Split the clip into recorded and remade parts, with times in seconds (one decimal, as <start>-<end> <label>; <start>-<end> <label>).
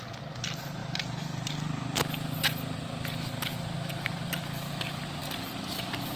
0.0-6.2 recorded